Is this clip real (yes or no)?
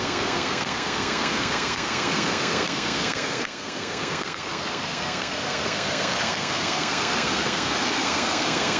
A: no